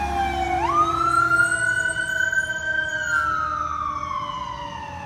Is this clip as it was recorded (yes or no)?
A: yes